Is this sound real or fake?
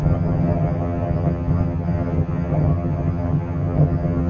fake